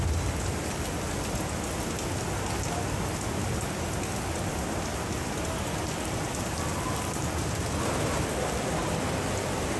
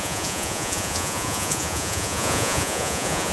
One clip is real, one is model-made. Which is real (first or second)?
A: first